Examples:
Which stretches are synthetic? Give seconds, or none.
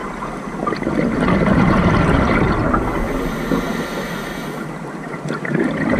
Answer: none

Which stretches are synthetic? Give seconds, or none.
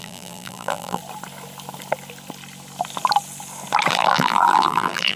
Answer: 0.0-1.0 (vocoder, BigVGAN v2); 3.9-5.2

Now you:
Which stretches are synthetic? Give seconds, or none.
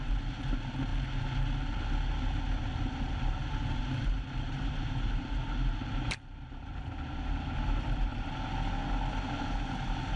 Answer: 0.0-0.9 (vocoder, BigVGAN v2); 3.1-8.1; 9.1-10.2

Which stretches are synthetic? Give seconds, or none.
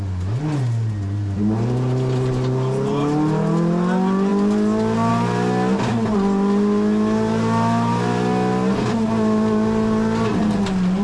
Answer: none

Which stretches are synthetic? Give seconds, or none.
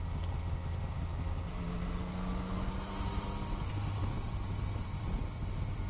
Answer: 4.0-5.4 (vocoder, BigVGAN v2)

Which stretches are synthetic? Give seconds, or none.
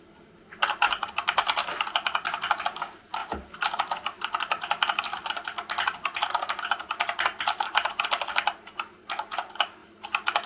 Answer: none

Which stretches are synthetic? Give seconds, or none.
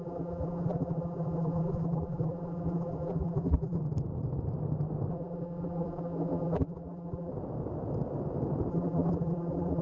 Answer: 0.0-3.8 (vocoder, BigVGAN v2); 5.1-7.3; 8.7-9.8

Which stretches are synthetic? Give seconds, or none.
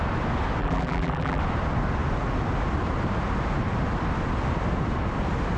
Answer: 0.6-1.4 (vocoder, BigVGAN v2)